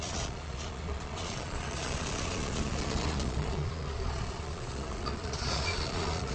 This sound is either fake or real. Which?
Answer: fake